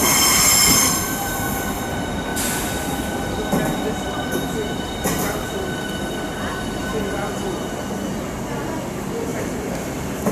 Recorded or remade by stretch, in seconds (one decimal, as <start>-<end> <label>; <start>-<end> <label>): 0.0-2.3 recorded; 2.3-6.3 remade; 6.3-9.3 recorded; 9.3-10.3 remade